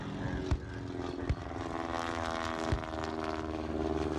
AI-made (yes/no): no